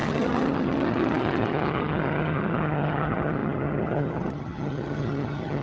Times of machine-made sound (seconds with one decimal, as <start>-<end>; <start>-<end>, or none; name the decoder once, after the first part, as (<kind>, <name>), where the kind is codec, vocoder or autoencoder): 0.0-5.6 (vocoder, HiFi-GAN)